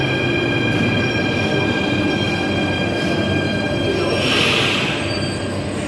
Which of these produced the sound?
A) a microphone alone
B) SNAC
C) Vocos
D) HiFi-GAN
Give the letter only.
A